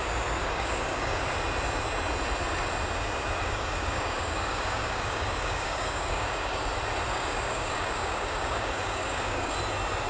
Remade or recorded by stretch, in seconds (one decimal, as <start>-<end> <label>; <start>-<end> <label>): 0.0-0.4 recorded; 0.4-1.2 remade; 1.2-3.4 recorded; 3.4-6.6 remade; 6.6-7.1 recorded; 7.1-9.5 remade; 9.5-10.1 recorded